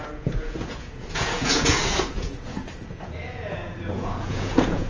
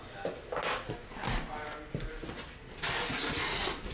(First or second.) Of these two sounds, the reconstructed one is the first